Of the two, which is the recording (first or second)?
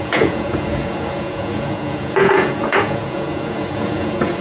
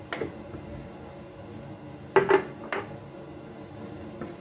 second